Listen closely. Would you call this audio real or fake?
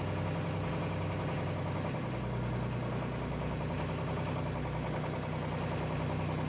real